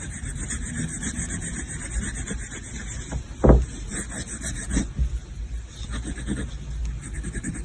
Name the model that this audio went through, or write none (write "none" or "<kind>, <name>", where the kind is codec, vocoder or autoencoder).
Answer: none